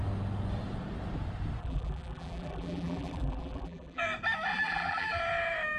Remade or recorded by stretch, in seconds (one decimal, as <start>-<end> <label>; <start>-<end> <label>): 0.0-1.6 recorded; 1.6-4.0 remade; 4.0-4.5 recorded; 4.5-5.2 remade; 5.2-5.8 recorded